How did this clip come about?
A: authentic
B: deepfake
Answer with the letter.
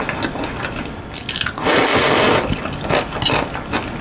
A